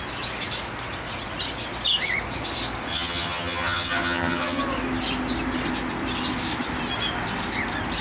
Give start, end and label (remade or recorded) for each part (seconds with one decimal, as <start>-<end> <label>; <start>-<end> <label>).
0.0-2.9 recorded; 2.9-4.6 remade; 4.6-8.0 recorded